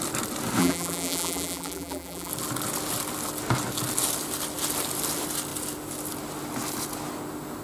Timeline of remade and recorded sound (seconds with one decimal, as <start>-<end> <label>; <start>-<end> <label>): 0.0-0.6 recorded; 0.6-2.3 remade; 2.3-7.6 recorded